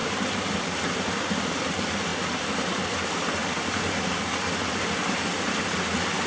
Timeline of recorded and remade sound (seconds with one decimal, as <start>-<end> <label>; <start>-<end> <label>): 0.0-3.4 remade; 3.4-6.3 recorded